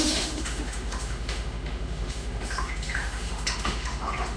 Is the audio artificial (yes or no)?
yes